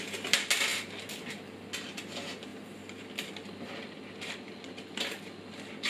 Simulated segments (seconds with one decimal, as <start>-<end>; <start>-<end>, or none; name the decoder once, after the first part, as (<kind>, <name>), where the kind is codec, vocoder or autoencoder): none